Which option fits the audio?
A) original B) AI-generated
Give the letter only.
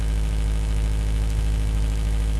B